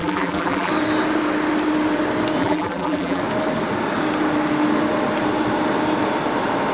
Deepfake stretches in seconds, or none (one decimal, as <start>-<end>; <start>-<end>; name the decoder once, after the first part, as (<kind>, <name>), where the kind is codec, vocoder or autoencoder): 0.0-0.7 (vocoder, BigVGAN v2); 2.4-3.2